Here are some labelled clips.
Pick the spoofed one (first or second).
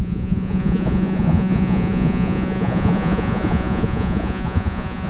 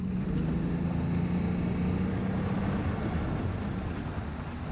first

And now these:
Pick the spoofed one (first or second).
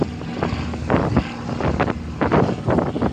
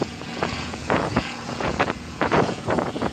second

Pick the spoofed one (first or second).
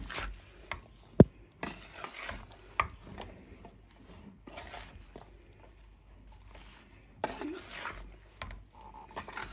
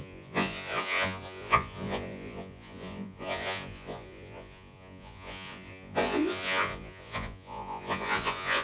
second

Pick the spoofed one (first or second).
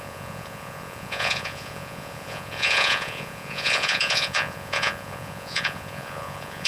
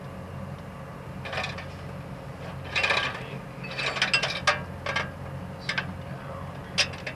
first